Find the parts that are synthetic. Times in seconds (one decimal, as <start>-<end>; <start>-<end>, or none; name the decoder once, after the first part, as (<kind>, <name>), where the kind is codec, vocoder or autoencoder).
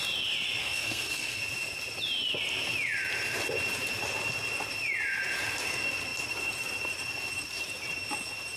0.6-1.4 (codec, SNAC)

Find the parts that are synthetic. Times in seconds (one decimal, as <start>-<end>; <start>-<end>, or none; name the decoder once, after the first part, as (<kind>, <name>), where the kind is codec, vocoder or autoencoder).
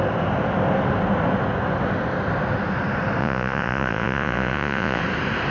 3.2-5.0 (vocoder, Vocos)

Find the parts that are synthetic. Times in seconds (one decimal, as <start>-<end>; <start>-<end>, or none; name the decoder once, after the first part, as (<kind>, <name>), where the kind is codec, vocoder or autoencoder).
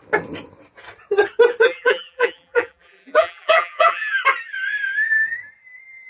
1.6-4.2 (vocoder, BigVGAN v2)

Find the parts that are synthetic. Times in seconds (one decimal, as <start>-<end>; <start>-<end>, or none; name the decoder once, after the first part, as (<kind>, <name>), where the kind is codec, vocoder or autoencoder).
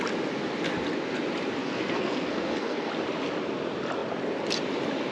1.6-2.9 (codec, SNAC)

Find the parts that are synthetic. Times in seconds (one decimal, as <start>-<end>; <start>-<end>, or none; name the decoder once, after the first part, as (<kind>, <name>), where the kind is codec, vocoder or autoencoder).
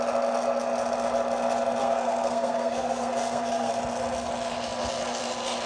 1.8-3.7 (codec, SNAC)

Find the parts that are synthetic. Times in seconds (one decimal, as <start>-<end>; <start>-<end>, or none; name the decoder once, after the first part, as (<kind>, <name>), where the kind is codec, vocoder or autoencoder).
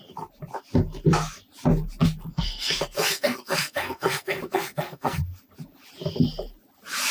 2.3-5.2 (codec, SNAC)